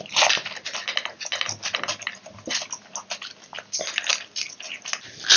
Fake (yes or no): no